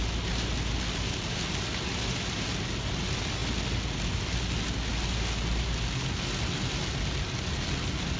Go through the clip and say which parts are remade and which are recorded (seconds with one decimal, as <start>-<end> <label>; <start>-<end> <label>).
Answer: 0.0-8.2 recorded